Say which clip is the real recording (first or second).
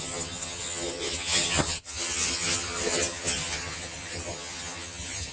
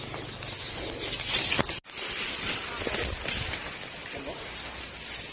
second